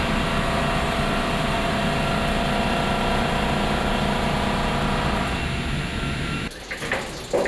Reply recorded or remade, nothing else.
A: recorded